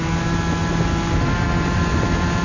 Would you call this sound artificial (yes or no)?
no